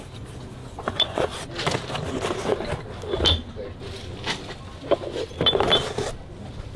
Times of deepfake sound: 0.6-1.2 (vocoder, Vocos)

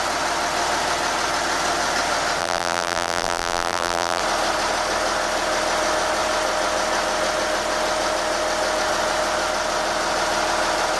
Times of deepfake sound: 2.4-4.2 (vocoder, BigVGAN v2)

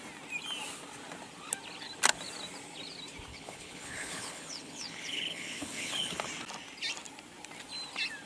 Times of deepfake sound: 3.3-6.3 (codec, HILCodec)

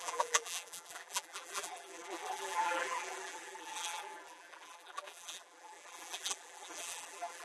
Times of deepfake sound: 0.0-7.4 (vocoder, BigVGAN v2)